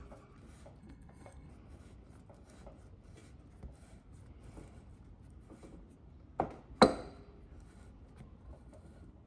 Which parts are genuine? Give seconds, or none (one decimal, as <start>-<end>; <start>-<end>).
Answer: 0.0-0.8; 1.5-9.3